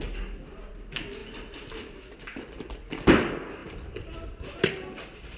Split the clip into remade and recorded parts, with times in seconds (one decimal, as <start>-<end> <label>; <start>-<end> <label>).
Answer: 0.0-5.4 recorded